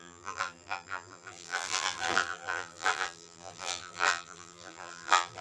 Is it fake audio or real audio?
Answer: fake